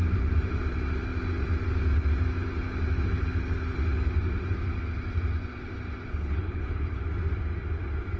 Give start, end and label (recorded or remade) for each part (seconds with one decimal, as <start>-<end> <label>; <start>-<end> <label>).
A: 0.0-6.1 recorded; 6.1-7.0 remade; 7.0-8.2 recorded